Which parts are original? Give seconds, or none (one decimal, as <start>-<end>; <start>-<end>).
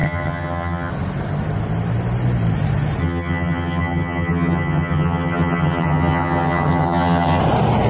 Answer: 0.9-3.0; 7.4-7.9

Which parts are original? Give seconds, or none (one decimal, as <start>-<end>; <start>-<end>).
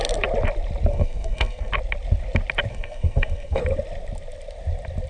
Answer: 0.0-0.9; 1.7-2.7; 3.6-5.1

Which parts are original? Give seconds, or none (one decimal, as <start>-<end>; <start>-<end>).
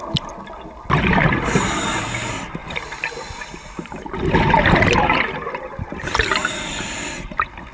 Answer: 0.0-7.7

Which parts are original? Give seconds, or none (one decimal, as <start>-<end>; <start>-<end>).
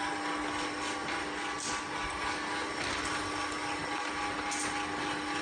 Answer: 0.0-5.4